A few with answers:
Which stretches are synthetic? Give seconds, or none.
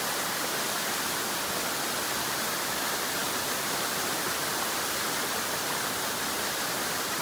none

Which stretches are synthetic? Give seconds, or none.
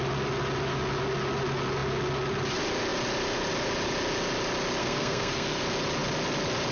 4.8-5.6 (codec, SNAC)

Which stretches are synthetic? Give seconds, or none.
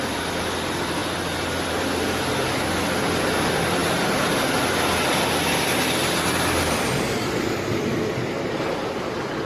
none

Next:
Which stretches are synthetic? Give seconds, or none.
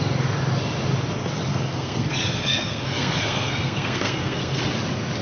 1.5-4.6 (codec, SNAC)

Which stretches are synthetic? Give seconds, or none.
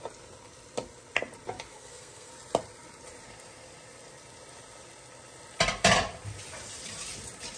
1.7-2.3 (codec, SNAC)